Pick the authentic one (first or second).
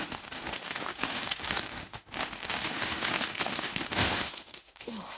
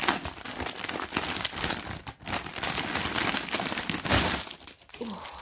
second